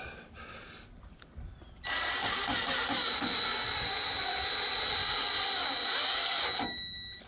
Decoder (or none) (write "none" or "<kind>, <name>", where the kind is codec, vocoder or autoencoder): none